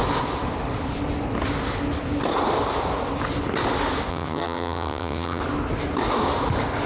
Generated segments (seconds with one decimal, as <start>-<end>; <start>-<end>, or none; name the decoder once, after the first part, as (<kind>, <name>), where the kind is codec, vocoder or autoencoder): 4.1-5.4 (vocoder, HiFi-GAN)